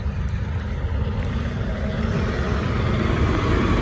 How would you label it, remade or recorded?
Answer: recorded